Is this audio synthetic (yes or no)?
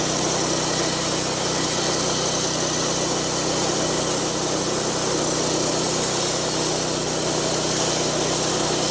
no